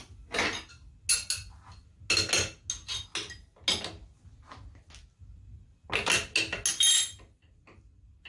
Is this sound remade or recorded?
recorded